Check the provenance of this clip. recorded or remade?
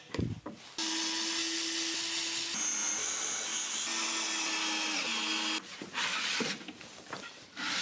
recorded